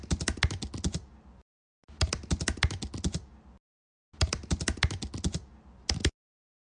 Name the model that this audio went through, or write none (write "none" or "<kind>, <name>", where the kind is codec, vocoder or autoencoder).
none